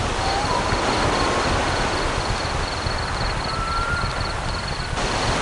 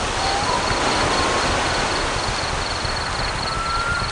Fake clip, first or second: first